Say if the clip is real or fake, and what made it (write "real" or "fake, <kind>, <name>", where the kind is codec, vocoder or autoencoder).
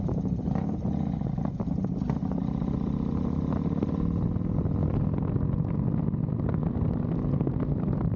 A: real